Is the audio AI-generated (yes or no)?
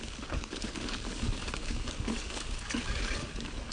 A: yes